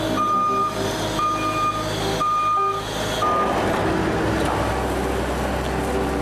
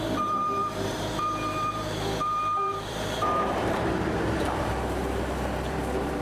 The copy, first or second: second